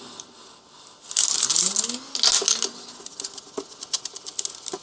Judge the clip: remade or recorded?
recorded